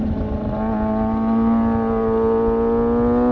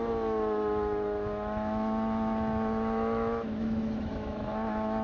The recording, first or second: first